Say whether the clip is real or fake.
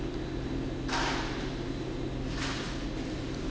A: real